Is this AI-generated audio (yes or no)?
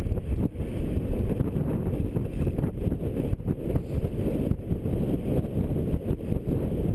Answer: no